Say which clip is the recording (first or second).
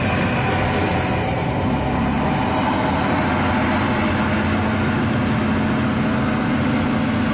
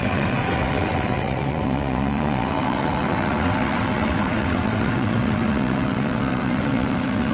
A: first